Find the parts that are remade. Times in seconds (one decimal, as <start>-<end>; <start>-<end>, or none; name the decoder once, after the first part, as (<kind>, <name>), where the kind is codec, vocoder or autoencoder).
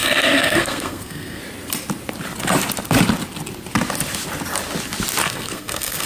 0.0-1.4 (codec, SNAC); 5.2-6.1